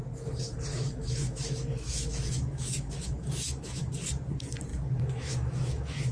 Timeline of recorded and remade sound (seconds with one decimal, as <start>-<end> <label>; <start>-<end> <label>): 0.0-0.7 recorded; 0.7-3.9 remade; 3.9-4.7 recorded; 4.7-6.1 remade